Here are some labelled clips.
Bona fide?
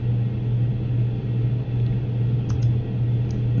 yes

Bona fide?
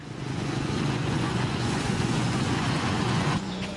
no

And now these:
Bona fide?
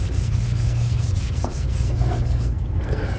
no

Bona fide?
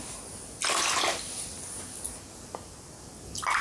yes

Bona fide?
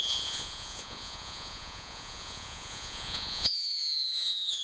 no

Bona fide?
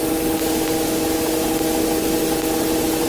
yes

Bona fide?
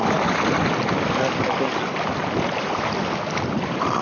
yes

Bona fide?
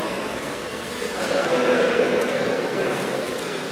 no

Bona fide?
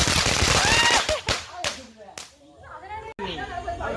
yes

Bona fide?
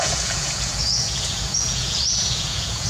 no